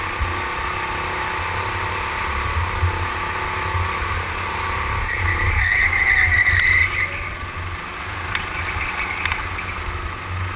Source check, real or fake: real